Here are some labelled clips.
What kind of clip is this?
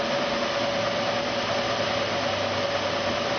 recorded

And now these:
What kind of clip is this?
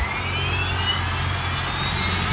recorded